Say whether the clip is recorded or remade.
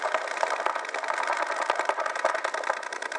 recorded